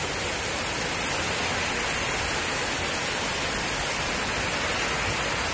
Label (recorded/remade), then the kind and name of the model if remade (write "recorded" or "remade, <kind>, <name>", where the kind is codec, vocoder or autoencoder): recorded